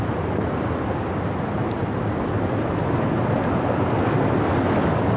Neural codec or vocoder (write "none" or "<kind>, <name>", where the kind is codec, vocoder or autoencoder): none